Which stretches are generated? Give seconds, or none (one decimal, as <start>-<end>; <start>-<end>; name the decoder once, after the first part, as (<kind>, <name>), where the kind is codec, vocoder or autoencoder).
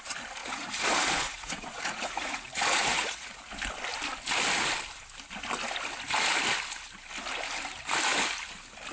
0.4-3.4 (vocoder, Vocos)